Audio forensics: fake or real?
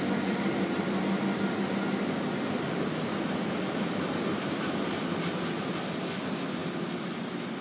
real